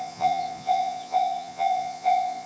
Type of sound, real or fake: fake